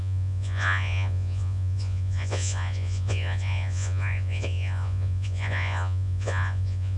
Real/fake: fake